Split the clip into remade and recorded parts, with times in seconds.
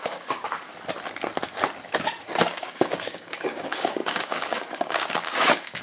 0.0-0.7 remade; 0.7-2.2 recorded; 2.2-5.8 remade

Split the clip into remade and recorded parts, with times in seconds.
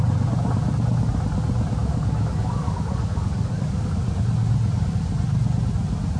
0.0-1.8 recorded; 1.8-4.0 remade; 4.0-6.2 recorded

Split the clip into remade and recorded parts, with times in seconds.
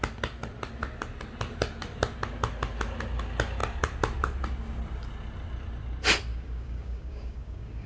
0.0-6.3 recorded; 6.3-7.9 remade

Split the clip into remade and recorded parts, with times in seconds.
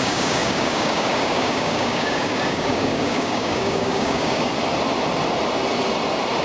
0.0-4.5 remade; 4.5-6.4 recorded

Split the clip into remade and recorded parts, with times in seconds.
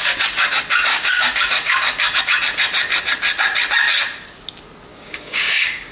0.0-0.9 recorded; 0.9-2.2 remade; 2.2-4.9 recorded; 4.9-5.9 remade